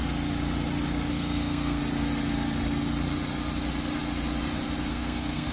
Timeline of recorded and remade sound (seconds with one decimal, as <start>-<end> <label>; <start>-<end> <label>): 0.0-1.1 recorded; 1.1-1.8 remade; 1.8-4.9 recorded; 4.9-5.5 remade